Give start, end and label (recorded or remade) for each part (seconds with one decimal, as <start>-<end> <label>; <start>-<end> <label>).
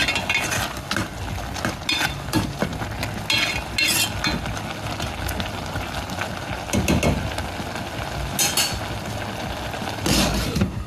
0.0-10.9 recorded